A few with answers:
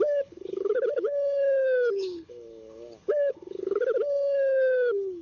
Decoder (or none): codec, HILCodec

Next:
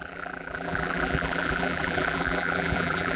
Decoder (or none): vocoder, BigVGAN v2